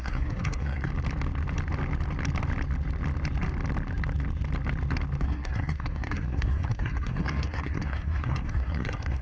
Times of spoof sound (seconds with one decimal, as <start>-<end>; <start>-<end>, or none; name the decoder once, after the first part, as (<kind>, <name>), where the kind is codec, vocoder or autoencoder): 0.0-0.9 (codec, SNAC); 5.2-9.2